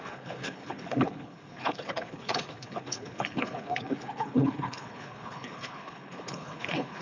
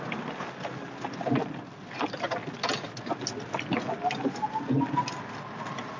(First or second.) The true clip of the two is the second